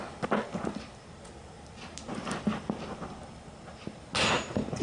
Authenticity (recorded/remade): recorded